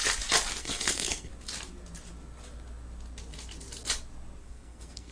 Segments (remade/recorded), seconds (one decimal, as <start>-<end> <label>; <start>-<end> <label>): 0.0-0.6 recorded; 0.6-1.3 remade; 1.3-4.4 recorded; 4.4-5.1 remade

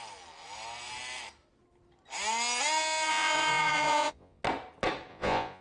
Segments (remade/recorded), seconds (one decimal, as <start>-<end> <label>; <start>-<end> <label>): 0.0-3.1 recorded; 3.1-4.4 remade; 4.4-5.1 recorded; 5.1-5.6 remade